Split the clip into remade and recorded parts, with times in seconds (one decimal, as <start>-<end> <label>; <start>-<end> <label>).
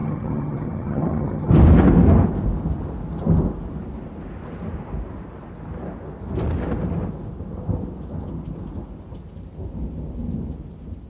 0.0-1.5 remade; 1.5-11.1 recorded